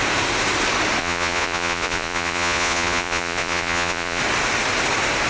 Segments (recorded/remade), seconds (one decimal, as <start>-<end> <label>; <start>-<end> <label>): 0.0-1.0 recorded; 1.0-4.2 remade; 4.2-5.3 recorded